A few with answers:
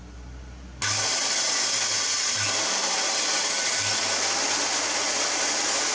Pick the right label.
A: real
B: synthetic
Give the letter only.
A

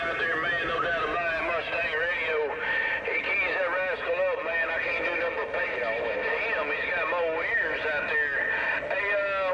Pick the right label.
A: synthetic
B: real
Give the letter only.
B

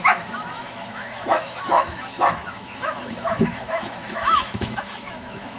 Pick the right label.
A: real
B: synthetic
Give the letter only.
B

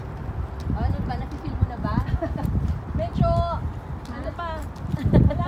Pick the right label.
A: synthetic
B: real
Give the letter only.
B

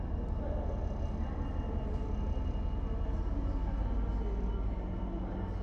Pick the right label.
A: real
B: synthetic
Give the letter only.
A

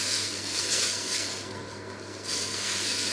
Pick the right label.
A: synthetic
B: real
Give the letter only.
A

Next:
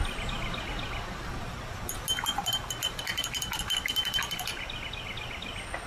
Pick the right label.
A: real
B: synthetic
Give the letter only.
A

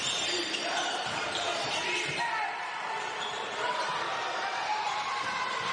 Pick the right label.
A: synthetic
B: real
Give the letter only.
A